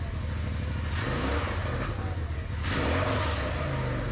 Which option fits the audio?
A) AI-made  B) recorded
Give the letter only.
B